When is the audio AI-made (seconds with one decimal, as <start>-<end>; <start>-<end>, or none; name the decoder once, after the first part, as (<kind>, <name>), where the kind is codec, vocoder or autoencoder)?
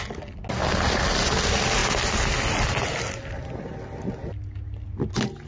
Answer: none